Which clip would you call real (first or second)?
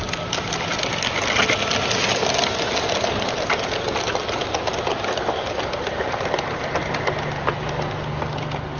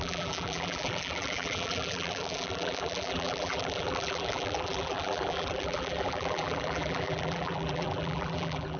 first